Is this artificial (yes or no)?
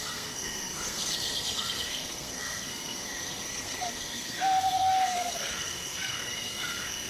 yes